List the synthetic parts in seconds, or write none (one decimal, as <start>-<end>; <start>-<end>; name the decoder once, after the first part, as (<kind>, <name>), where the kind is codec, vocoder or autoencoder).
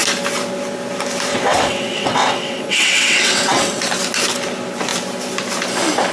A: 1.3-3.8 (vocoder, WaveNeXt)